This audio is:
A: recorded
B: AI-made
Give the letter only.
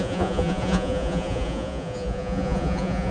B